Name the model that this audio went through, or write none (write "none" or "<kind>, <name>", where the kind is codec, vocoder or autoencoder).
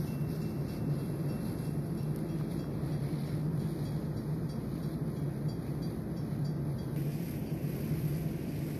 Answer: none